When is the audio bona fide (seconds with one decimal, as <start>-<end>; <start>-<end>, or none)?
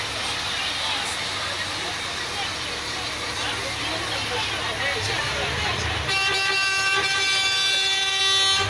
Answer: 0.0-6.1; 8.2-8.7